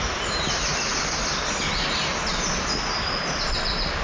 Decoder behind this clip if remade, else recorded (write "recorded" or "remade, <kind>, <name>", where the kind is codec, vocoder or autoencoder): recorded